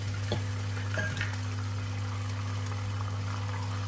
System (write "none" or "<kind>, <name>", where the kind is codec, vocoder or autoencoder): none